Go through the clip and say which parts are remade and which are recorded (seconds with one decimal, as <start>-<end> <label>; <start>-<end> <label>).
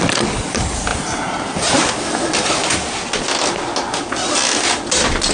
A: 0.0-5.3 recorded